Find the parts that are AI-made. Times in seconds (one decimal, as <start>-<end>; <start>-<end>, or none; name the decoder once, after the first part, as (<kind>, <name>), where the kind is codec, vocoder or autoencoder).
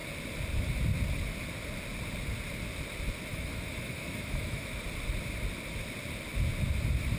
3.3-4.7 (autoencoder, DAC-VAE)